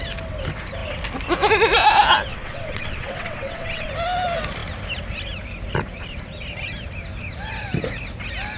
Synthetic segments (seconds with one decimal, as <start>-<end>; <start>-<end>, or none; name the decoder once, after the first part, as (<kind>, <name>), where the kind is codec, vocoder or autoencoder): 2.3-3.9 (vocoder, WaveNeXt)